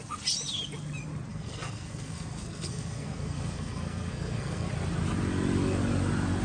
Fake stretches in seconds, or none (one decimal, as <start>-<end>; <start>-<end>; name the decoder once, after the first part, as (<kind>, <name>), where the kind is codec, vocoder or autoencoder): 1.3-4.7 (codec, SNAC)

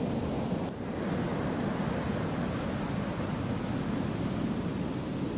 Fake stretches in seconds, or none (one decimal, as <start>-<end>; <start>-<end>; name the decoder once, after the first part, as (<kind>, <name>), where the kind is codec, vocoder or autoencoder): none

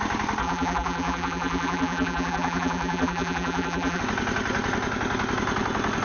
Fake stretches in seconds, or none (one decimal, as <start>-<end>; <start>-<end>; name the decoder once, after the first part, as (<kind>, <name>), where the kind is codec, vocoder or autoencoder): 0.4-4.0 (vocoder, BigVGAN v2)

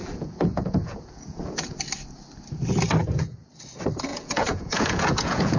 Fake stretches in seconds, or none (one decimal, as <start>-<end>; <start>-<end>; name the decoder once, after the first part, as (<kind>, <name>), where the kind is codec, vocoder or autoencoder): 0.0-1.8 (vocoder, Vocos); 3.0-3.5; 4.1-5.6

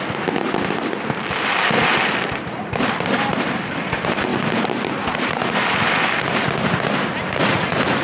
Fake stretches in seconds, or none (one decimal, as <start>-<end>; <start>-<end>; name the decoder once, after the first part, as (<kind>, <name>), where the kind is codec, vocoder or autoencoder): 4.3-5.6 (vocoder, BigVGAN v2)

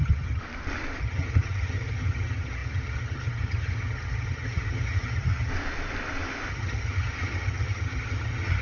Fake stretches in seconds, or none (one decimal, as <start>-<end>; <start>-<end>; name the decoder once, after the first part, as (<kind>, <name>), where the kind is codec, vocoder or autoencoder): 0.0-0.4 (vocoder, HiFi-GAN); 1.0-5.5; 6.5-8.6

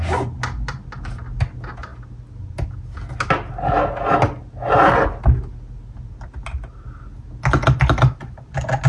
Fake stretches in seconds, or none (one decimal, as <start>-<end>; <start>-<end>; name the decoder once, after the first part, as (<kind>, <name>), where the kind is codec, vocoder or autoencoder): none